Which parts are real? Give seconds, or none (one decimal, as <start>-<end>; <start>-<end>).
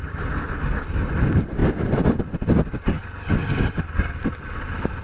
0.0-5.0